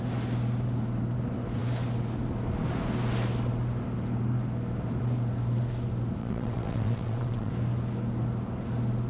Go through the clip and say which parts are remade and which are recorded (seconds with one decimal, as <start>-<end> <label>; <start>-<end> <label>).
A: 0.0-6.2 recorded; 6.2-7.5 remade; 7.5-9.1 recorded